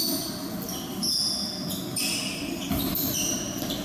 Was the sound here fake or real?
real